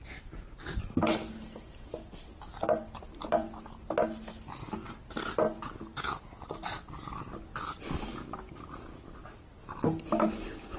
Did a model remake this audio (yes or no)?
no